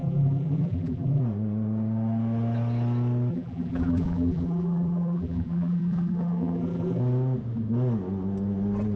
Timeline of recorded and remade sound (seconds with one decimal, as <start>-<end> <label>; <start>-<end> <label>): 0.0-1.2 remade; 1.2-3.3 recorded; 3.3-7.0 remade; 7.0-9.0 recorded